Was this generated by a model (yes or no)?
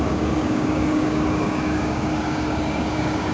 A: yes